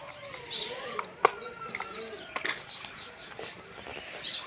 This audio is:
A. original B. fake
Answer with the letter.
A